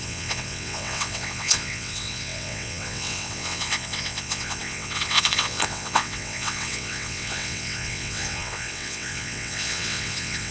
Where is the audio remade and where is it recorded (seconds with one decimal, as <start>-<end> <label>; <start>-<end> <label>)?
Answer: 0.0-10.5 remade